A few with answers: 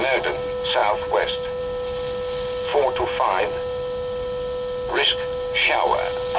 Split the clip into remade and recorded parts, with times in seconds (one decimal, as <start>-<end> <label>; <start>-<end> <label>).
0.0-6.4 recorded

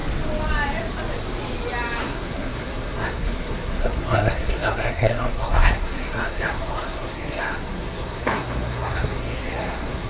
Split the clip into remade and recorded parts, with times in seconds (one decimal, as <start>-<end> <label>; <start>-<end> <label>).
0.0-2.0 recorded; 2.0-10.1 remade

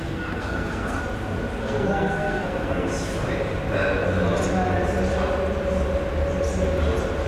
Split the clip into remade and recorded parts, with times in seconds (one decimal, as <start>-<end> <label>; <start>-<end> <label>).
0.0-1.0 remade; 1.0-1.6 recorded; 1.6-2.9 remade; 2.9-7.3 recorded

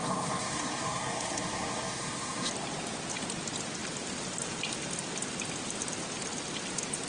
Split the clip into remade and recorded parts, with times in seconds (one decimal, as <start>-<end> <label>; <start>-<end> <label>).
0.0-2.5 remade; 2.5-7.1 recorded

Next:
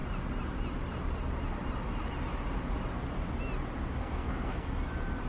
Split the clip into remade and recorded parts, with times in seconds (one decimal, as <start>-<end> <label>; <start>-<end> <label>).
0.0-4.0 recorded; 4.0-4.7 remade; 4.7-5.3 recorded

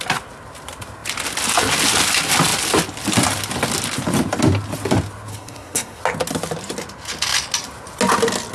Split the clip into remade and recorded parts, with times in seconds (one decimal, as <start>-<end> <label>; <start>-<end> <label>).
0.0-5.3 recorded; 5.3-6.0 remade; 6.0-8.5 recorded